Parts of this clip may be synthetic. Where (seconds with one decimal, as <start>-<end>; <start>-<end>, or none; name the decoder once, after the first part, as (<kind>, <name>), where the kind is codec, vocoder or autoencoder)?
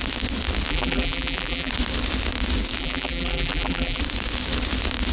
0.7-1.7 (vocoder, BigVGAN v2); 2.8-4.0